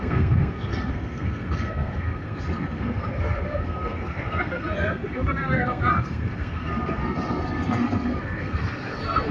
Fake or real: fake